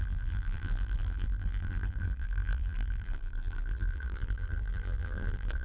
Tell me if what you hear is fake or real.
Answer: fake